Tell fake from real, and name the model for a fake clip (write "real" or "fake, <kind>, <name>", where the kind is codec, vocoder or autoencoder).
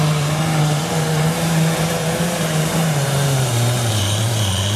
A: fake, vocoder, BigVGAN v2